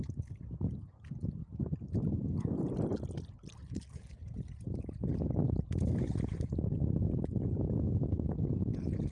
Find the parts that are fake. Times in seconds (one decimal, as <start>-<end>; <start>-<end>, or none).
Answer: none

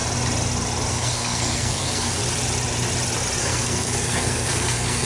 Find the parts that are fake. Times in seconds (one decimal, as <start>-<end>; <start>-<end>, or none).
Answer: 0.9-2.2; 3.4-5.0

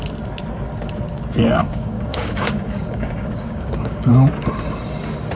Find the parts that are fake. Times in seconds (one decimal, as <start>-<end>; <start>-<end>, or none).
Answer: 1.6-4.1

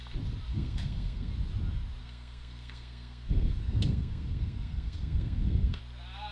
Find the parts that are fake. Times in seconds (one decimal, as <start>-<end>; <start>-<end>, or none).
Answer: 0.5-1.3; 2.0-5.8